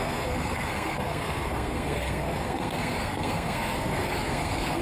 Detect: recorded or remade remade